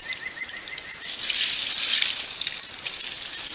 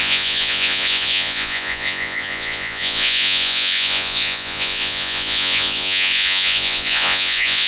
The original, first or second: first